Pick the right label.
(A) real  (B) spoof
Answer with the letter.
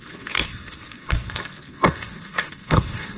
B